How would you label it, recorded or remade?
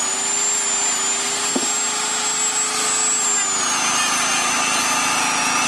recorded